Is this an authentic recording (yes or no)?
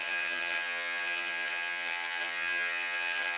no